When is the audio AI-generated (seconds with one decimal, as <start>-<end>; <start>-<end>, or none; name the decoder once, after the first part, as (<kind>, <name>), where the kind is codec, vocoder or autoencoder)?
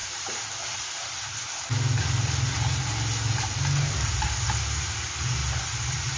0.0-1.1 (vocoder, BigVGAN v2); 5.4-6.2